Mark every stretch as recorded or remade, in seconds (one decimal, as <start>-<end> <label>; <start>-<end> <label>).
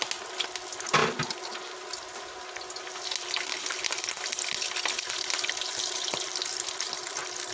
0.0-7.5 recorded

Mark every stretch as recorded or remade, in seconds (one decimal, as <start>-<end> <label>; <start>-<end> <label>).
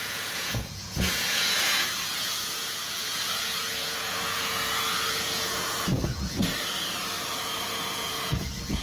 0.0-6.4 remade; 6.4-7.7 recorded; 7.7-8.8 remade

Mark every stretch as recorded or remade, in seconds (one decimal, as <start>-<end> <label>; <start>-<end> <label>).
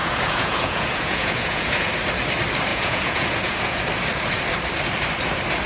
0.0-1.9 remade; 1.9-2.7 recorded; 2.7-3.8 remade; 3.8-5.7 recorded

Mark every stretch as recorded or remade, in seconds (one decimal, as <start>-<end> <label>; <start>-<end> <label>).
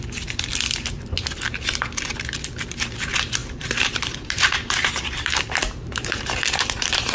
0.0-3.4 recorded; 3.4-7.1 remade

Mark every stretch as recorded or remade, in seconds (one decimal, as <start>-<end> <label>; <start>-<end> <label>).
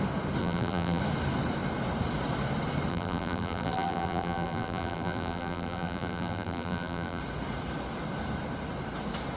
0.0-0.4 recorded; 0.4-1.0 remade; 1.0-2.9 recorded; 2.9-7.2 remade; 7.2-9.4 recorded